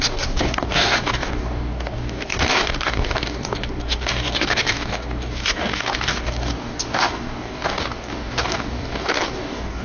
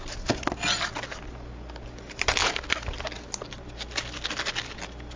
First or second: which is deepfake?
first